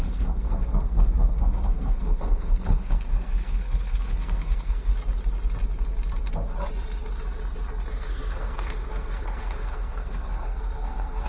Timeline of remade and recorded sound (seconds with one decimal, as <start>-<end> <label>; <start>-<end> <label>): 0.0-4.9 remade; 4.9-7.9 recorded; 7.9-11.3 remade